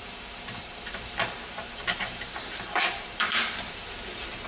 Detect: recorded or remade remade